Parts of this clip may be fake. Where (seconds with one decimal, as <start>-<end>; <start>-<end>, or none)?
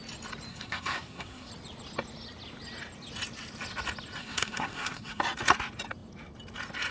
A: 0.5-1.5; 4.2-5.2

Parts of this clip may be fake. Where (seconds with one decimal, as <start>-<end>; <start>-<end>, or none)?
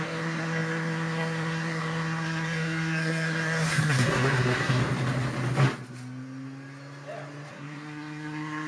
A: 0.0-4.8; 7.5-8.7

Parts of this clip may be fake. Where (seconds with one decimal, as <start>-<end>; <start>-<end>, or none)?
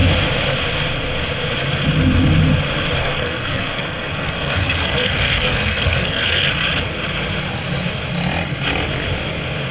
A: 3.0-6.5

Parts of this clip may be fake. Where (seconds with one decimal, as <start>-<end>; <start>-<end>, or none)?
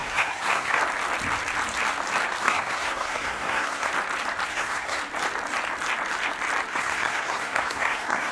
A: 0.0-0.8; 2.4-3.9; 4.5-5.0; 6.7-8.3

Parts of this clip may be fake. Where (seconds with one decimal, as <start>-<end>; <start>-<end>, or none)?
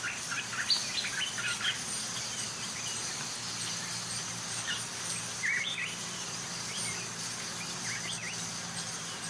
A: none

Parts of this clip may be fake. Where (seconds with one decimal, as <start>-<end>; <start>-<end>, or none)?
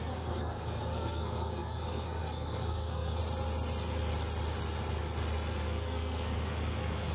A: 0.0-3.2; 5.6-7.1